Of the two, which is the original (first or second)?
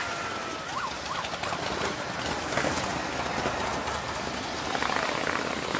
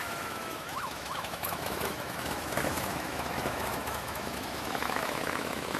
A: first